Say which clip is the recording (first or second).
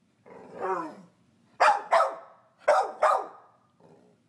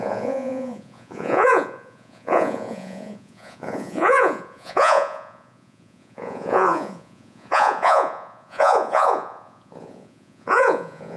first